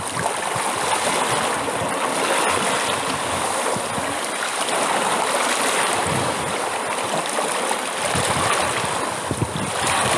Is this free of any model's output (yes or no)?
yes